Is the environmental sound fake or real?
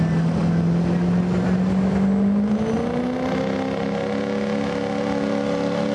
real